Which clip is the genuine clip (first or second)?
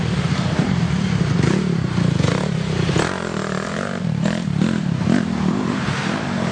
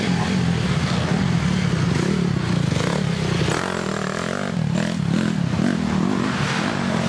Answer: second